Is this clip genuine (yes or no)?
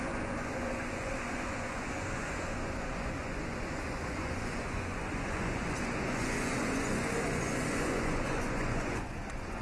no